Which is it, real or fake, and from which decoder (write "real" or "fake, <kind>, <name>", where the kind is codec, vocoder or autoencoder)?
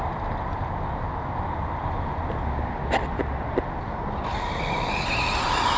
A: real